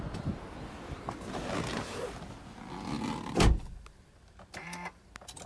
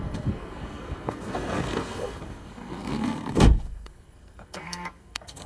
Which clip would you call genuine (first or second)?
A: first